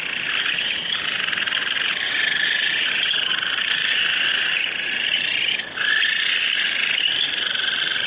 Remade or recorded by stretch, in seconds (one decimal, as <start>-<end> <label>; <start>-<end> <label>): 0.0-8.1 recorded